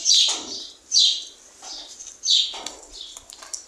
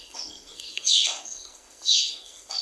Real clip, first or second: first